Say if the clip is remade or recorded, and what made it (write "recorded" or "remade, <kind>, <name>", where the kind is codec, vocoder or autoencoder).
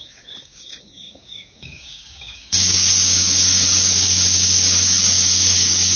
remade, codec, DAC